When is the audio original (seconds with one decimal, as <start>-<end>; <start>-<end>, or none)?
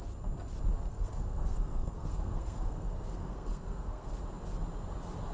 0.0-0.9; 4.1-5.3